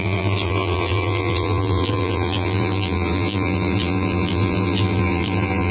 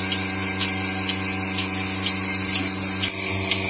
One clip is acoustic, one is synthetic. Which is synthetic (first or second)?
first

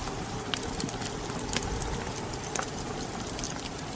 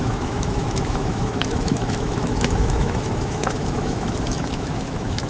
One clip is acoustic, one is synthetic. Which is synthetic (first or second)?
second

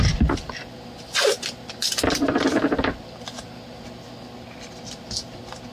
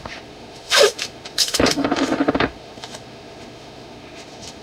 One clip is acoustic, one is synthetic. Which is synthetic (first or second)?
second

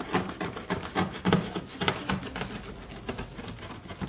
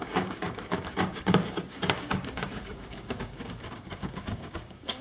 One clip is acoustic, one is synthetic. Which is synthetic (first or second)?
second